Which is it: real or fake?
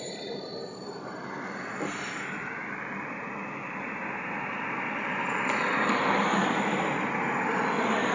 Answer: real